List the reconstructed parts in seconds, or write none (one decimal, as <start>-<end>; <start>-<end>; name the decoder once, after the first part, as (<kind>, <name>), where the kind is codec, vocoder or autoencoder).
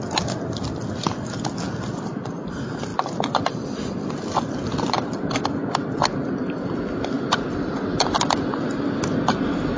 none